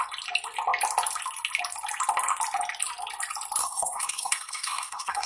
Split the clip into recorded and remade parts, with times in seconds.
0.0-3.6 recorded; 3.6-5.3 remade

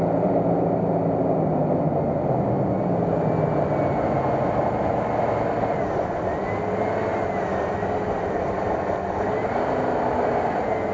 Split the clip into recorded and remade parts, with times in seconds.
0.0-10.9 recorded

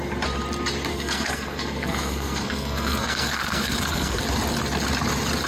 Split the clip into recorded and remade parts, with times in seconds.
0.0-0.9 recorded; 0.9-4.2 remade; 4.2-5.5 recorded

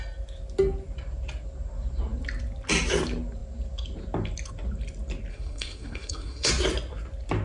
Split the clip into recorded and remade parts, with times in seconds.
0.0-5.3 recorded; 5.3-6.5 remade; 6.5-7.4 recorded

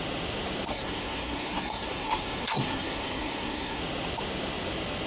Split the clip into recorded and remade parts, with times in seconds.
0.0-0.7 recorded; 0.7-3.8 remade; 3.8-5.1 recorded

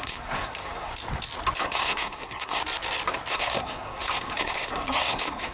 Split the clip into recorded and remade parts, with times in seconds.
0.0-0.9 remade; 0.9-1.6 recorded; 1.6-2.6 remade; 2.6-3.3 recorded; 3.3-5.5 remade

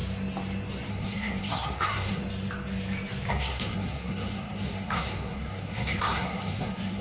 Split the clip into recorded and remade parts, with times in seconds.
0.0-0.9 recorded; 0.9-2.2 remade; 2.2-3.3 recorded; 3.3-7.0 remade

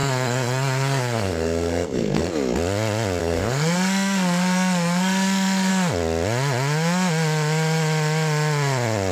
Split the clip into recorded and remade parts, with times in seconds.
0.0-2.3 remade; 2.3-3.2 recorded; 3.2-5.7 remade; 5.7-9.1 recorded